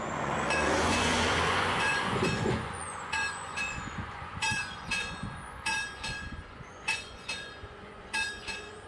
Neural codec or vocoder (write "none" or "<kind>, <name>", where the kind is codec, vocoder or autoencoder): vocoder, Vocos